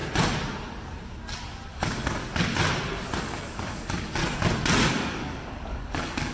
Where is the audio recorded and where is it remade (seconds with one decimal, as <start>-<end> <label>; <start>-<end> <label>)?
0.0-1.7 recorded; 1.7-2.2 remade; 2.2-3.2 recorded; 3.2-4.2 remade; 4.2-4.9 recorded; 4.9-6.3 remade